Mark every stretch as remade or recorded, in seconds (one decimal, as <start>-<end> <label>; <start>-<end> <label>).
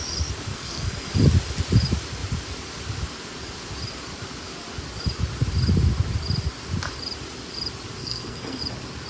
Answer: 0.0-0.5 recorded; 0.5-1.1 remade; 1.1-8.0 recorded; 8.0-8.6 remade; 8.6-9.1 recorded